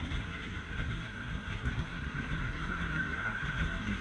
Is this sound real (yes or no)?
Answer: no